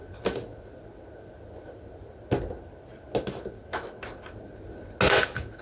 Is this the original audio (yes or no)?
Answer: yes